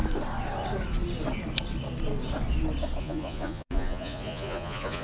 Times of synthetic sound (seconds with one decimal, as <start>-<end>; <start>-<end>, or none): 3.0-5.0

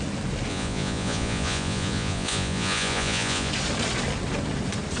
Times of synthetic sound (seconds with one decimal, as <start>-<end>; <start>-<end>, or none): 0.5-3.5

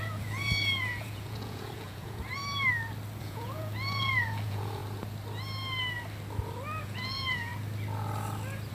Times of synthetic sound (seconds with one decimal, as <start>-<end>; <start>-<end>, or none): 0.0-2.4; 3.2-4.8; 6.8-7.5